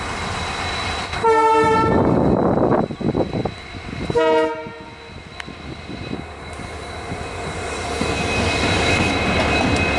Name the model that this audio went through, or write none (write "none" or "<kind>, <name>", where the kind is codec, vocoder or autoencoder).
none